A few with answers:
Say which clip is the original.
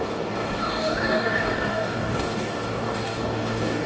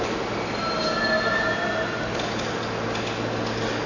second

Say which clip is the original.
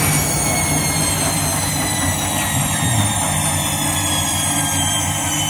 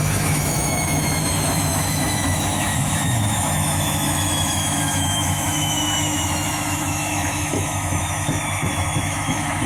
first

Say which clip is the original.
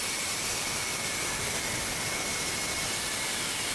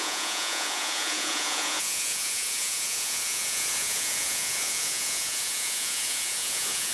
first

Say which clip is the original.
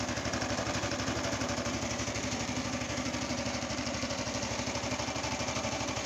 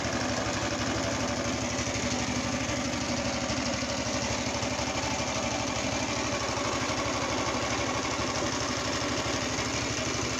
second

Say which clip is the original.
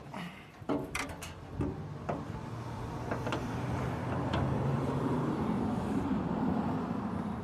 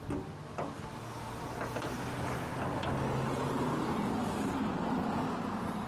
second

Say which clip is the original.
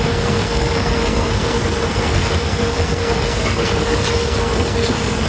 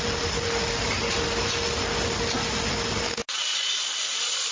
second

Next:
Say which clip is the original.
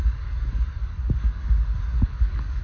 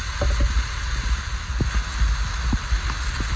second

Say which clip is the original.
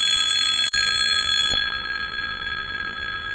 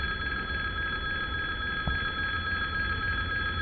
second